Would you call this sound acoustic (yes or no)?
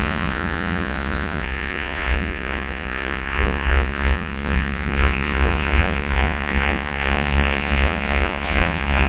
no